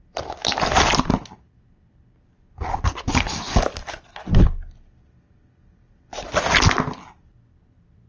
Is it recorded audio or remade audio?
recorded